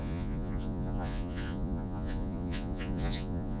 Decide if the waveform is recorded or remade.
remade